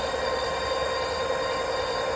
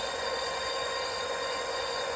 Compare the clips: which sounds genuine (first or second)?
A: first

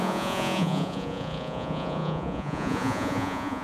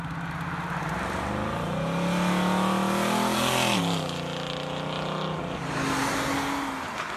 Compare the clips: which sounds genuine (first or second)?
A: second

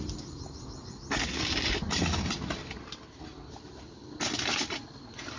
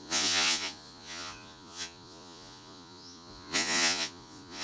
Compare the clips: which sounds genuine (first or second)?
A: first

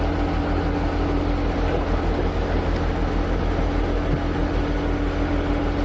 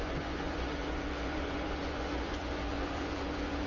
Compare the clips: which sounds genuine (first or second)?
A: first